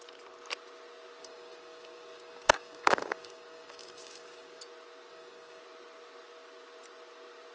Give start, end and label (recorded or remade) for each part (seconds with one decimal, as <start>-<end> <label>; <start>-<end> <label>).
0.0-1.2 recorded; 1.2-4.6 remade; 4.6-5.1 recorded; 5.1-5.6 remade; 5.6-7.5 recorded